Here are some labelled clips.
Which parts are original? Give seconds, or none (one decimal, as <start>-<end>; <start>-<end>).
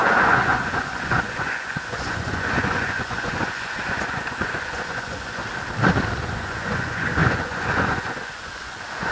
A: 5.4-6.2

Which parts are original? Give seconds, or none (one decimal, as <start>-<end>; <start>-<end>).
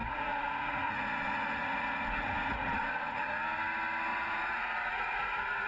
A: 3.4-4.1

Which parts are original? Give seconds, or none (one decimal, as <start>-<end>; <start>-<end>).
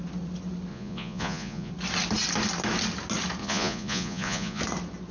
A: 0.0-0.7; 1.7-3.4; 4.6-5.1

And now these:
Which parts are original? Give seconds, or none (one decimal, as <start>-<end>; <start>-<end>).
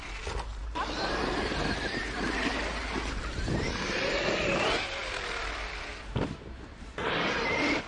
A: 0.0-7.9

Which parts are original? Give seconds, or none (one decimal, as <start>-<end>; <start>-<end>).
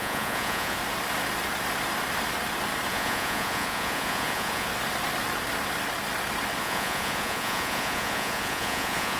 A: 0.8-2.9; 4.7-6.6